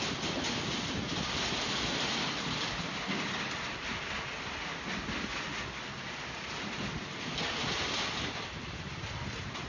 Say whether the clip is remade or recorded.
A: recorded